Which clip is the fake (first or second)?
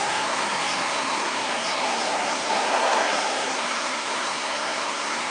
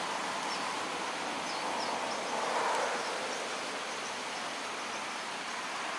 first